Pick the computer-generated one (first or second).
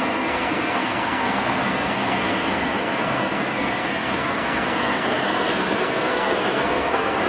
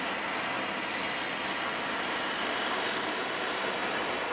first